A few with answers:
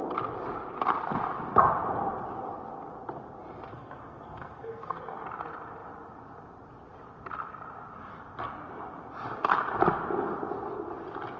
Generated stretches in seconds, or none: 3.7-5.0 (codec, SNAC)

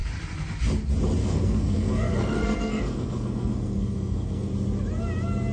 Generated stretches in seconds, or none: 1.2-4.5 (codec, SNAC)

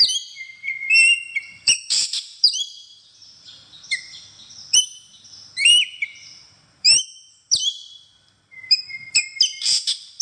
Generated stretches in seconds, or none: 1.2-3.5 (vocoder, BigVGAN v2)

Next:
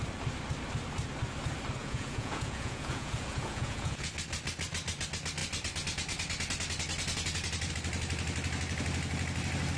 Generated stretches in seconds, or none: 1.8-4.1 (vocoder, Vocos)

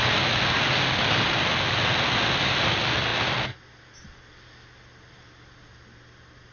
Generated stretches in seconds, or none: none